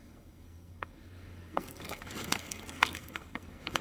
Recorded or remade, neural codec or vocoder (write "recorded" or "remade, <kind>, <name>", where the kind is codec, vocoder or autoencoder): remade, codec, SNAC